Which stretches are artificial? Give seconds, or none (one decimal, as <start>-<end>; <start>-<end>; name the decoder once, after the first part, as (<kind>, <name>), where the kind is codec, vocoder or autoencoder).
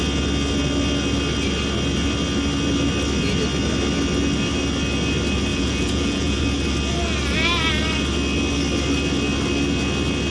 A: 5.5-6.4 (vocoder, Vocos)